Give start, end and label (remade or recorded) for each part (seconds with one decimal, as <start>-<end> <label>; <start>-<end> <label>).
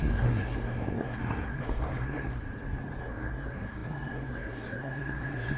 0.0-2.4 remade; 2.4-3.0 recorded; 3.0-5.6 remade